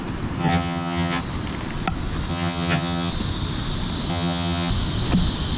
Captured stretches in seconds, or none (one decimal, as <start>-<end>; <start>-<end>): 0.0-0.4; 1.2-2.3; 3.1-4.1; 4.7-5.6